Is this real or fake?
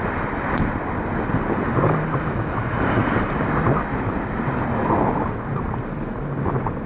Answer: real